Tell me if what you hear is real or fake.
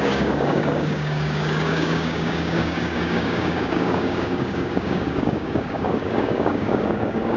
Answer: fake